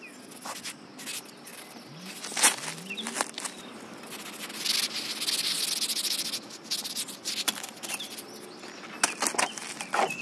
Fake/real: real